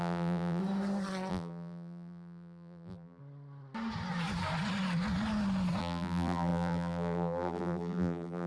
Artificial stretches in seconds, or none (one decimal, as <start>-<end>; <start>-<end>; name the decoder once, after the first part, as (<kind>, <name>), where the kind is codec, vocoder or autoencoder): 0.0-0.6 (vocoder, BigVGAN v2); 1.3-3.2; 5.8-8.5